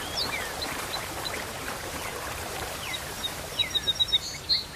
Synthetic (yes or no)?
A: yes